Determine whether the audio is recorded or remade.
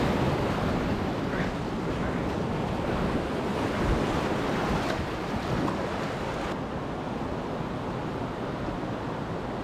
recorded